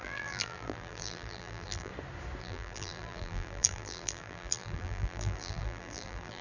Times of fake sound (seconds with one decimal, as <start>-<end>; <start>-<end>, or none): 0.0-1.9; 2.4-6.4